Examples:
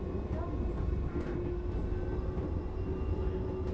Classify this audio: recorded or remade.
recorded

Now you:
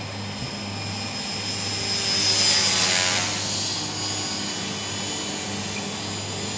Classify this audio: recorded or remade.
recorded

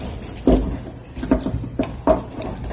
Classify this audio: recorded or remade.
recorded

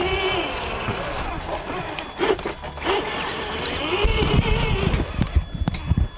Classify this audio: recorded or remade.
recorded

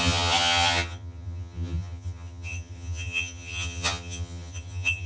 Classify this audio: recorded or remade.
remade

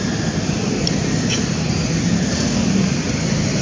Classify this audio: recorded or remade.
recorded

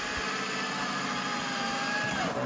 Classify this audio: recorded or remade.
recorded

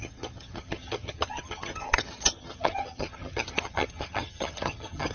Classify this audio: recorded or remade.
remade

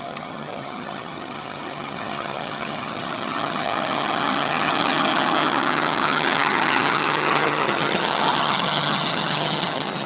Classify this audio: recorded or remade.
remade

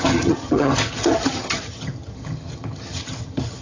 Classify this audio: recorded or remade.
remade